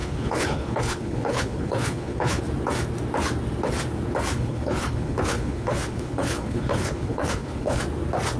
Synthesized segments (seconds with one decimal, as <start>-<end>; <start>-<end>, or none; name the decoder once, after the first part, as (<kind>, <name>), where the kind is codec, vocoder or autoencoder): 0.0-2.4 (codec, HILCodec); 4.3-7.8